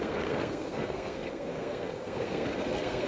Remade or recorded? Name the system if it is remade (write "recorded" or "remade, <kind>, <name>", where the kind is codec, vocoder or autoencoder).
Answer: remade, codec, SNAC